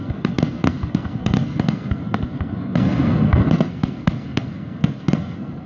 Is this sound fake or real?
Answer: fake